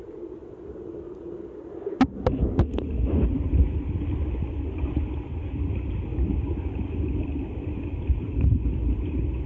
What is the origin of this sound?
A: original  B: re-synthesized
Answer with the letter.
A